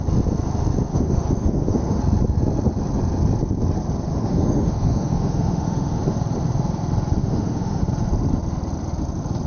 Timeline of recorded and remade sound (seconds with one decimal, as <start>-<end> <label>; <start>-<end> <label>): 0.0-0.9 recorded; 0.9-2.0 remade; 2.0-4.1 recorded; 4.1-6.0 remade; 6.0-7.2 recorded; 7.2-7.8 remade; 7.8-9.5 recorded